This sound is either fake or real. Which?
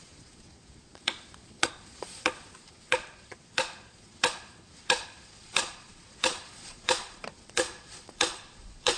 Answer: fake